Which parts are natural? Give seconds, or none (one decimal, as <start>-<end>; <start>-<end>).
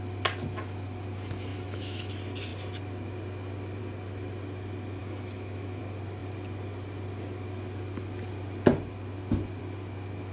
0.0-1.5; 2.1-5.0; 5.8-10.3